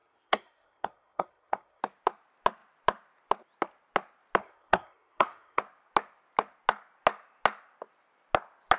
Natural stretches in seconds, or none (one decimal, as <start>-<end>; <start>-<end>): 1.8-4.4; 5.6-8.8